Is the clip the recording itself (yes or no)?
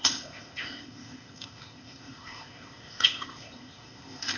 no